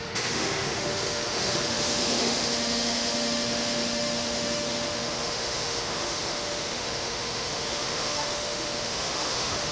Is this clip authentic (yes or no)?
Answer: no